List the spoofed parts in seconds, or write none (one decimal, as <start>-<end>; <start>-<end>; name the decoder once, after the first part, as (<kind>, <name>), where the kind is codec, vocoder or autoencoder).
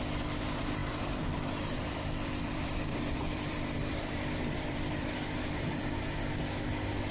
0.8-5.1 (vocoder, BigVGAN v2)